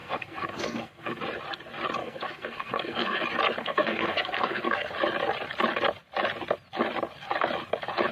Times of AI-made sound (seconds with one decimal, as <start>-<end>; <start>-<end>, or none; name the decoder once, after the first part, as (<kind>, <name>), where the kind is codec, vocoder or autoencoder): 0.0-1.2 (codec, SNAC); 2.0-3.2; 3.6-4.9